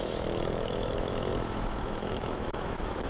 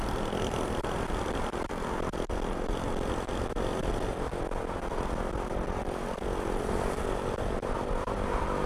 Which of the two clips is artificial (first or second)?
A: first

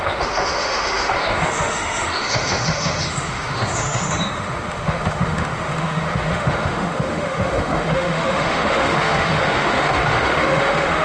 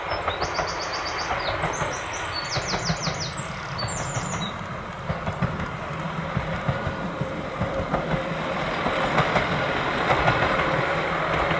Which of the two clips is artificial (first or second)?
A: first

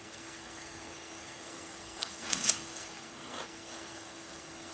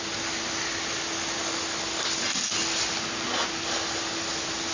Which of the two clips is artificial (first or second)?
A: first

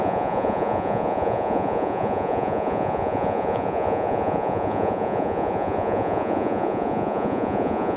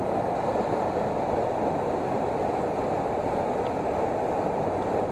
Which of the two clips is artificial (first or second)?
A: first